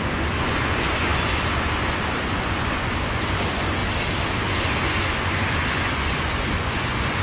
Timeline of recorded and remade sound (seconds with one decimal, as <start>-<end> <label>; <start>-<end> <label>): 0.0-3.8 remade; 3.8-4.5 recorded; 4.5-7.2 remade